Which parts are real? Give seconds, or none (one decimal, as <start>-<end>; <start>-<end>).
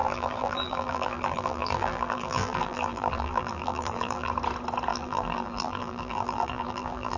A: 4.3-4.9